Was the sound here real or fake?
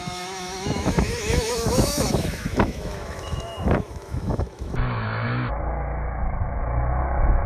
fake